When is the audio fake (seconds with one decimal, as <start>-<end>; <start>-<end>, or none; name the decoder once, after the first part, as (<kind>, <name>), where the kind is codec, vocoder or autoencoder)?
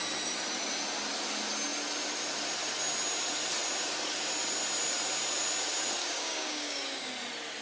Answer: 6.0-7.1 (codec, DAC)